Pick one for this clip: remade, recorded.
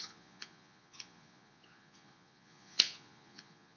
remade